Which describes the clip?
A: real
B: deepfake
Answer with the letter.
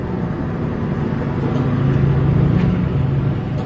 A